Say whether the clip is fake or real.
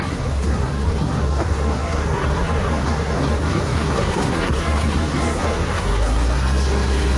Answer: fake